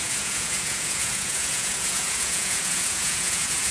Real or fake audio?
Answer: fake